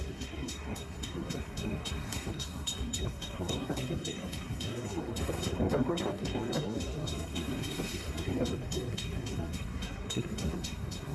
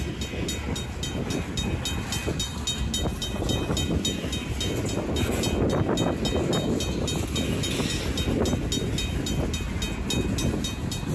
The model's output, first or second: first